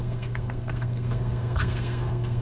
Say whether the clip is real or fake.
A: fake